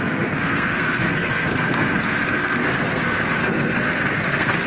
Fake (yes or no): yes